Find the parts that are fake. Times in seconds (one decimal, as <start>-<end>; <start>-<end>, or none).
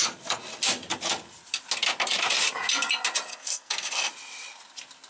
3.3-4.1